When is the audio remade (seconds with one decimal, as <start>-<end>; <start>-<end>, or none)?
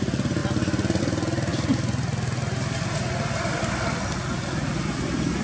none